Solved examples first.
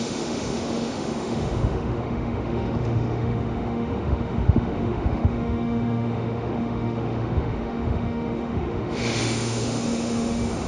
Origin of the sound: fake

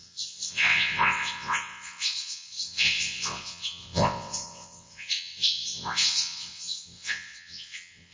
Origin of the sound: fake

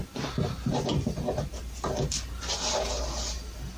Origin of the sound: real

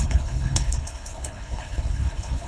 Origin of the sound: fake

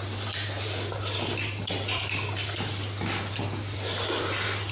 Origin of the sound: real